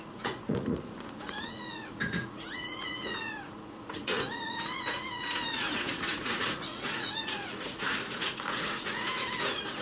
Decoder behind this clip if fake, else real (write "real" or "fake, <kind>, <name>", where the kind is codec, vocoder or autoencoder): fake, vocoder, Vocos